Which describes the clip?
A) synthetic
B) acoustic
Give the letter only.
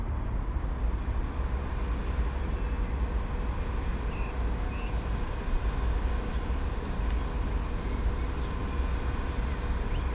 B